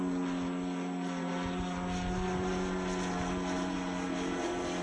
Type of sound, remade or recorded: recorded